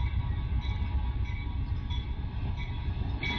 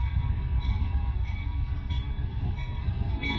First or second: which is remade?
second